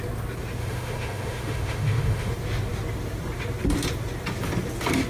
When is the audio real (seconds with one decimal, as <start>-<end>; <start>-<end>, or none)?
0.0-0.6; 2.3-5.1